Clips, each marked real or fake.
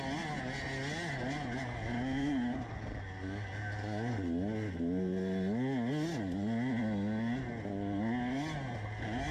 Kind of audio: real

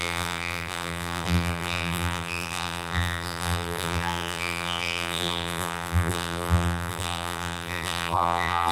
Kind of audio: fake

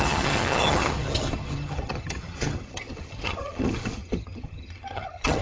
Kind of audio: fake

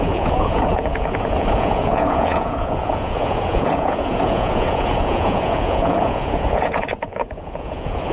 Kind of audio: fake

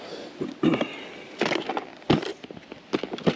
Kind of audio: real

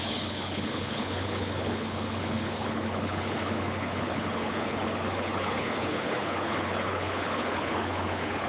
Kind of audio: fake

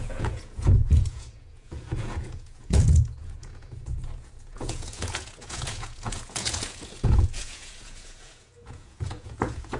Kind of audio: fake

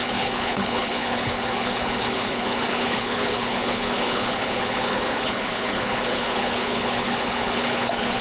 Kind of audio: fake